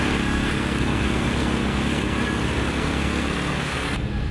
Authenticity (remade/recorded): remade